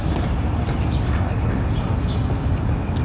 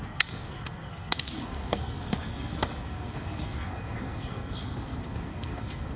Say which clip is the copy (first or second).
second